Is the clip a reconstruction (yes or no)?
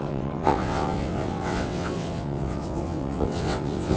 yes